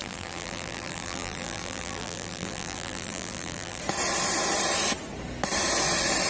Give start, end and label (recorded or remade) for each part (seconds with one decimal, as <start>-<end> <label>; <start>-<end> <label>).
0.0-3.8 remade; 3.8-6.3 recorded